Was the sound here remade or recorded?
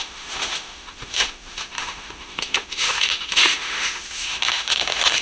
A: remade